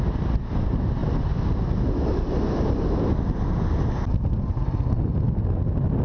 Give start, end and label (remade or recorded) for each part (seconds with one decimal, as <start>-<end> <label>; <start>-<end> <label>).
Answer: 0.0-6.0 recorded